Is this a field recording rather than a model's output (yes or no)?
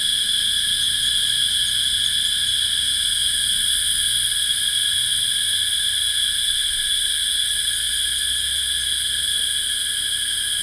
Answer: yes